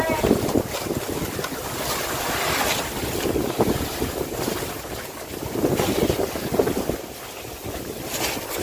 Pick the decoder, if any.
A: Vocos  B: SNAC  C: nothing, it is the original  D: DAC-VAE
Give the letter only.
C